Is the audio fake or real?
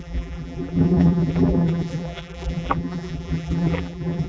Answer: fake